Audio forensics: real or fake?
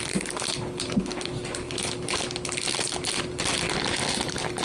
real